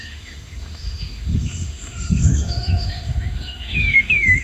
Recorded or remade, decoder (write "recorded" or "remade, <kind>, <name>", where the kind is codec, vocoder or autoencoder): remade, autoencoder, DAC-VAE